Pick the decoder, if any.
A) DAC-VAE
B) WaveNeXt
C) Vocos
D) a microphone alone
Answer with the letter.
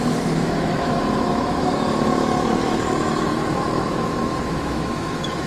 A